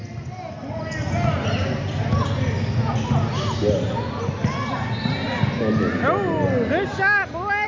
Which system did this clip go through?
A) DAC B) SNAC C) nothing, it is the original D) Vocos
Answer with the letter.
C